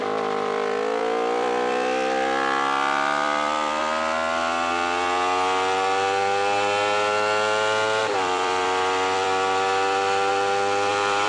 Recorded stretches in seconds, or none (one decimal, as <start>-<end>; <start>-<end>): 3.8-8.0; 10.3-10.9